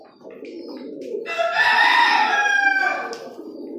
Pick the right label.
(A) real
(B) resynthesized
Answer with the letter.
A